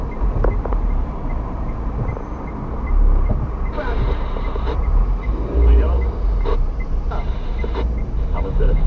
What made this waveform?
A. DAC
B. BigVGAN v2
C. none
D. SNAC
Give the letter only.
B